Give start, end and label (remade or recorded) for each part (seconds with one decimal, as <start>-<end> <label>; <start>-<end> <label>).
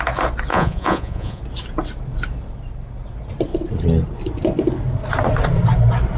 0.0-0.5 recorded; 0.5-1.4 remade; 1.4-6.2 recorded